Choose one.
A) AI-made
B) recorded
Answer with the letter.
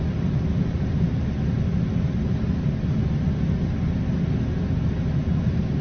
B